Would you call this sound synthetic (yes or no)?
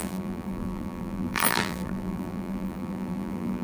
yes